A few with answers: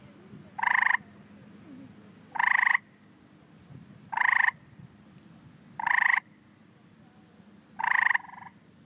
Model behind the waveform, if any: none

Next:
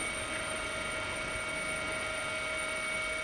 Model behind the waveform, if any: none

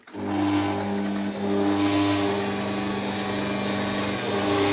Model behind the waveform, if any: none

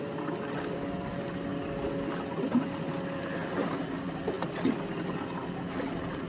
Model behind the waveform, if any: none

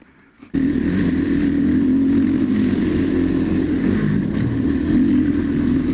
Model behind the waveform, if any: none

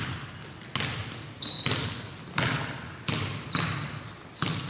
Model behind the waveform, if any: none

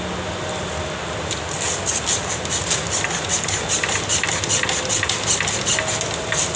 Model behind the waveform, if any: none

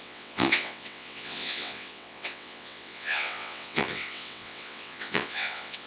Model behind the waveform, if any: vocoder, WaveNeXt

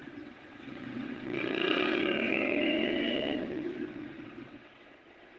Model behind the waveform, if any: vocoder, WaveNeXt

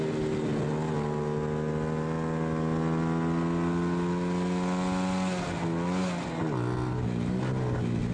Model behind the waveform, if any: none